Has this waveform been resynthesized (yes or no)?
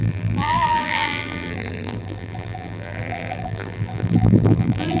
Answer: yes